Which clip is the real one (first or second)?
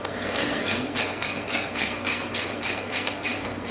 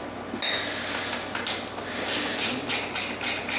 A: second